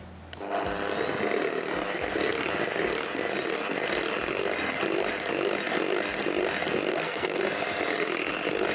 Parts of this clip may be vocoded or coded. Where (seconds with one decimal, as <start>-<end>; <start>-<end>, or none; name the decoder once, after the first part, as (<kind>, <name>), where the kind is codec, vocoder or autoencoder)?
6.9-7.4 (codec, SNAC)